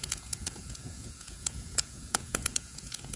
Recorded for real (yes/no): no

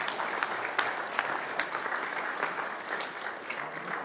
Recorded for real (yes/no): yes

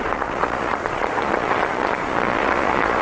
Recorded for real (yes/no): no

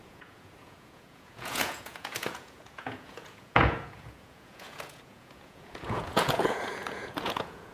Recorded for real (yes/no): no